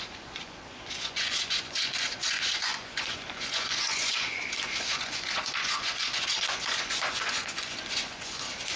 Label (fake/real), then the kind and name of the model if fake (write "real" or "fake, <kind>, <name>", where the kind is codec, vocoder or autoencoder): fake, vocoder, Vocos